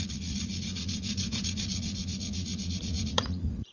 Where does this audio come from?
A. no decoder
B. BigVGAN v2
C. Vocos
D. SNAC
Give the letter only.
C